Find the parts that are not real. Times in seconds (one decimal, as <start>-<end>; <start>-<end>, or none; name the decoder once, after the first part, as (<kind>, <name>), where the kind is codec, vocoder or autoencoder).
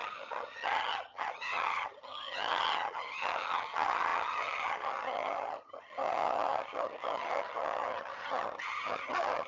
0.0-9.5 (vocoder, HiFi-GAN)